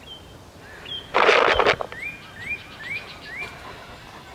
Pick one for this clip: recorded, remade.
recorded